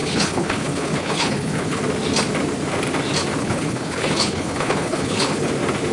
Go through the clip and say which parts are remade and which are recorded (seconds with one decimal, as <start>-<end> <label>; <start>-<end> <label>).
0.0-1.8 remade; 1.8-3.4 recorded; 3.4-5.5 remade; 5.5-5.9 recorded